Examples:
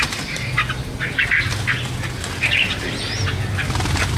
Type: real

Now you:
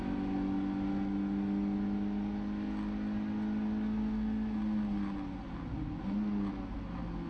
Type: real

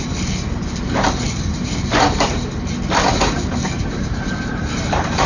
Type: fake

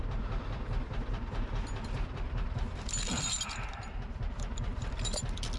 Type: fake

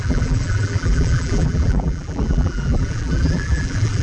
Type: fake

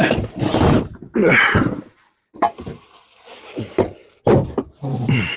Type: fake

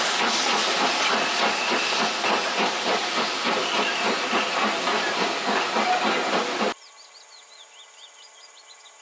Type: real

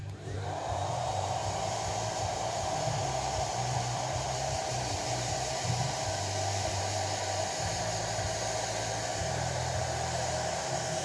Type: fake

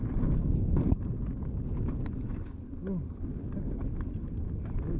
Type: real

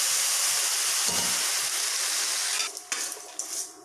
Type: real